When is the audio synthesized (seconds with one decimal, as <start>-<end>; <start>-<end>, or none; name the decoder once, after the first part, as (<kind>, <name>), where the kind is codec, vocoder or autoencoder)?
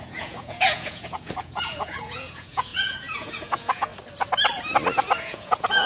0.0-3.9 (vocoder, Vocos); 5.2-5.9